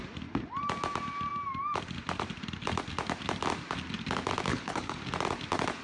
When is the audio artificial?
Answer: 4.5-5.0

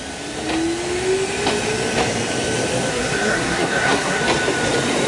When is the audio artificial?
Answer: 2.9-4.2

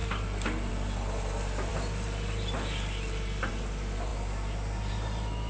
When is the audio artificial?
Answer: 0.0-0.7; 1.7-3.5

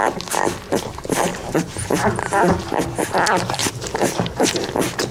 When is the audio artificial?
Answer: 1.3-2.5; 3.6-4.6

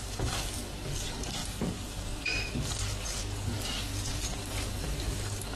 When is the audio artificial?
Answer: 0.0-5.6